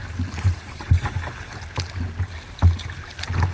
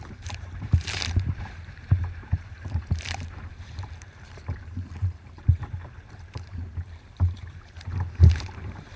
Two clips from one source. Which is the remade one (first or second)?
second